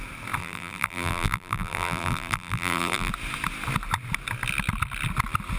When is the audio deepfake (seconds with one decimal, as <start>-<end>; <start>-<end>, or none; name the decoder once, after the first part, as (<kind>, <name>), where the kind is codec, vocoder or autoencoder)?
0.4-3.1 (vocoder, BigVGAN v2)